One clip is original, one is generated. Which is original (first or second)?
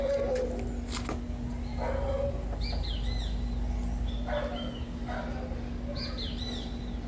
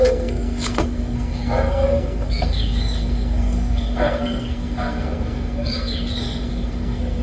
first